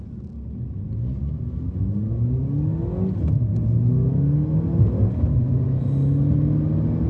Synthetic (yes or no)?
no